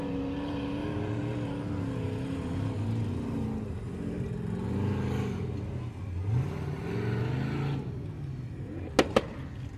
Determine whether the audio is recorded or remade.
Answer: recorded